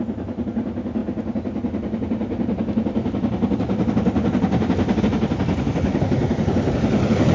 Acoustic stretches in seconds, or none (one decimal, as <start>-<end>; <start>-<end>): 0.0-7.3